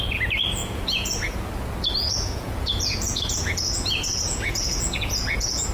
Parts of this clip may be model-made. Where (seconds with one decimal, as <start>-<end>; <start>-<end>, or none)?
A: 0.6-1.5; 2.0-5.7